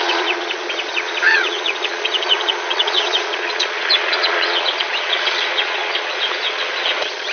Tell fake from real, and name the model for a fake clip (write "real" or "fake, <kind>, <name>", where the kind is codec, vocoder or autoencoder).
fake, vocoder, Vocos